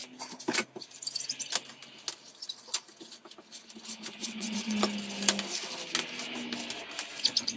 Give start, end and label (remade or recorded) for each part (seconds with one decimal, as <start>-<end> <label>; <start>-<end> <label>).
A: 0.0-4.2 recorded; 4.2-4.8 remade; 4.8-7.6 recorded